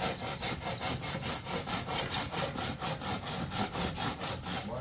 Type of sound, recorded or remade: recorded